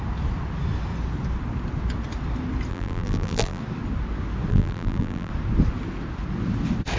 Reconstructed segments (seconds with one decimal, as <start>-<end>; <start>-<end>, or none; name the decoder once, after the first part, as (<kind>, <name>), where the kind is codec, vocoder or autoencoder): 2.7-3.6 (vocoder, BigVGAN v2); 4.5-5.3